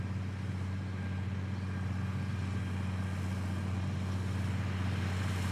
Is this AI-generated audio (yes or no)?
no